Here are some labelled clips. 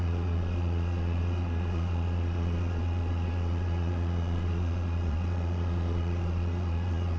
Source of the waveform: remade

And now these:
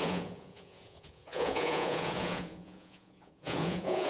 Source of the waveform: remade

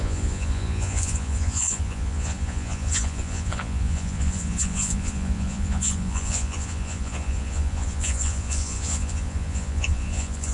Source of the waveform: remade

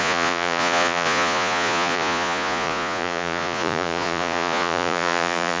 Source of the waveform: remade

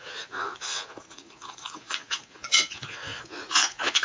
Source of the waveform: remade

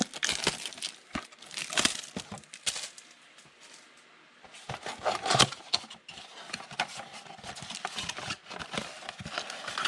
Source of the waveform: recorded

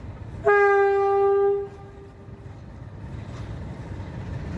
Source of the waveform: recorded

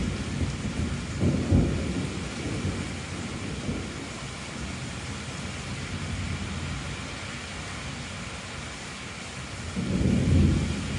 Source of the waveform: recorded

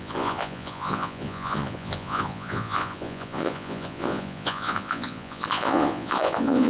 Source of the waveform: remade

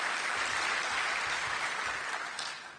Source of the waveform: recorded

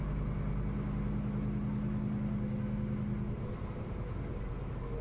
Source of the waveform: recorded